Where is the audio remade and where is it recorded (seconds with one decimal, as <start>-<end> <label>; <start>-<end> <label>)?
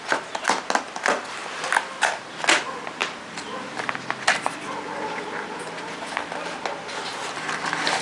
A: 0.0-8.0 recorded